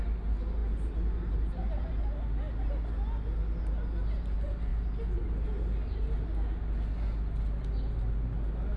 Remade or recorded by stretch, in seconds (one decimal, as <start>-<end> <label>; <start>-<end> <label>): 0.0-8.8 recorded